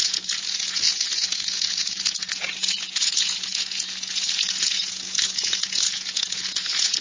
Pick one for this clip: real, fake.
fake